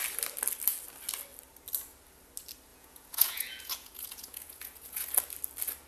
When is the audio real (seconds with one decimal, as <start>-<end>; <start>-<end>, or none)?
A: 0.0-2.7; 5.1-5.9